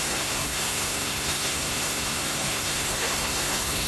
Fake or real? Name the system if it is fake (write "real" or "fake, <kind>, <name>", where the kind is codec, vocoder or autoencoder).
fake, codec, SNAC